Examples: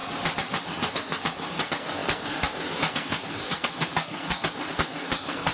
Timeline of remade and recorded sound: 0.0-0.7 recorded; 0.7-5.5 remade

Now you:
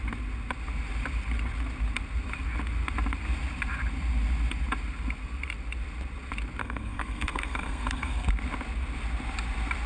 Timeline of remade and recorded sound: 0.0-6.6 recorded; 6.6-8.3 remade; 8.3-9.9 recorded

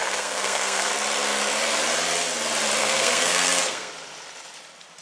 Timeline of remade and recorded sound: 0.0-0.9 remade; 0.9-2.8 recorded; 2.8-3.9 remade; 3.9-5.0 recorded

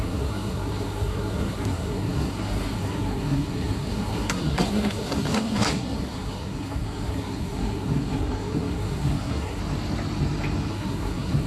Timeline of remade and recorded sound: 0.0-9.6 remade; 9.6-10.7 recorded; 10.7-11.5 remade

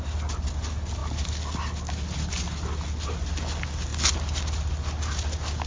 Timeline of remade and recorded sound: 0.0-5.7 recorded

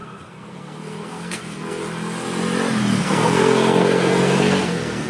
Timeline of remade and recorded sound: 0.0-1.8 remade; 1.8-3.0 recorded; 3.0-5.1 remade

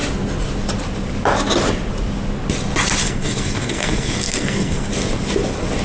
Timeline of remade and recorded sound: 0.0-3.0 recorded; 3.0-4.9 remade; 4.9-5.8 recorded

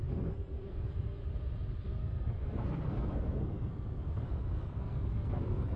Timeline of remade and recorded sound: 0.0-1.2 remade; 1.2-2.0 recorded; 2.0-5.8 remade